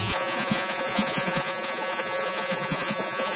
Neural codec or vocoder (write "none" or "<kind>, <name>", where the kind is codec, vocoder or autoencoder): vocoder, Vocos